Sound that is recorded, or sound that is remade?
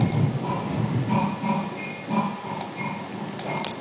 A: recorded